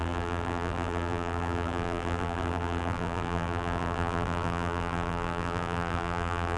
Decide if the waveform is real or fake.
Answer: fake